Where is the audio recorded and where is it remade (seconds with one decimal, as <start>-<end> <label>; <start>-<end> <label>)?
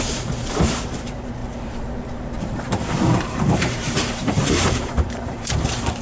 0.0-6.0 remade